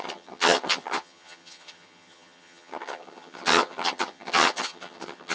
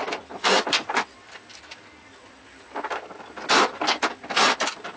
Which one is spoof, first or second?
first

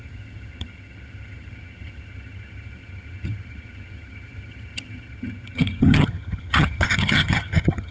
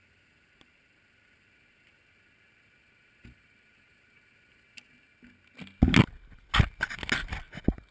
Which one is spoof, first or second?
first